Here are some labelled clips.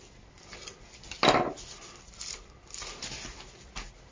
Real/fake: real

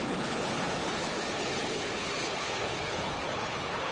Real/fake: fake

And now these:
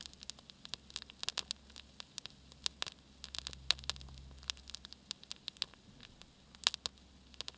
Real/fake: real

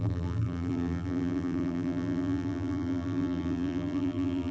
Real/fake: fake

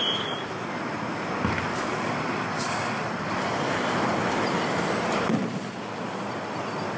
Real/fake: real